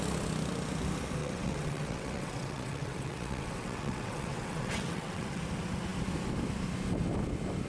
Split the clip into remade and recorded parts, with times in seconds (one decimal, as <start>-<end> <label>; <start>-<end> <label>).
0.0-1.2 recorded; 1.2-5.4 remade; 5.4-7.7 recorded